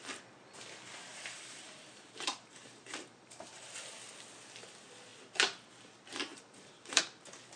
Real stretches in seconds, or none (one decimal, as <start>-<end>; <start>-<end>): 0.0-1.1; 3.7-6.3; 7.0-7.6